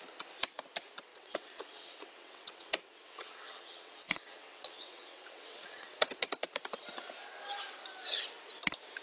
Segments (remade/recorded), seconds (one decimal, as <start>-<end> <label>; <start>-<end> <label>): 0.0-1.1 recorded; 1.1-6.3 remade; 6.3-9.0 recorded